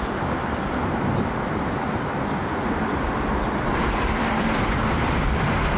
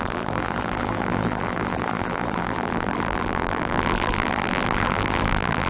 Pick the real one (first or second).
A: first